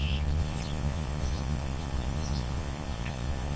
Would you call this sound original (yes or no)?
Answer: no